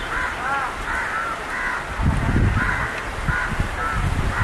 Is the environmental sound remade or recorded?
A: recorded